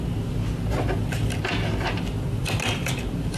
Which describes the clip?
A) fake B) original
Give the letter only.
B